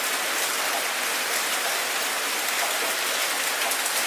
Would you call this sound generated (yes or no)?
no